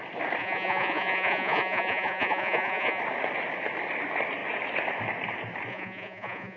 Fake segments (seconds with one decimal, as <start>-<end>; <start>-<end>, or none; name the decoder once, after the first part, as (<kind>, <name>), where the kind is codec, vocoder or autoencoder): 0.4-3.0 (vocoder, Vocos); 5.7-6.6